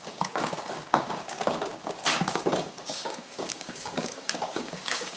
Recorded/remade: remade